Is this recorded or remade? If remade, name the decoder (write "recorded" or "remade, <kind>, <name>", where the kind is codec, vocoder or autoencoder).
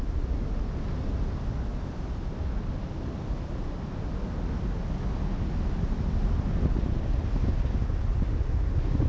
recorded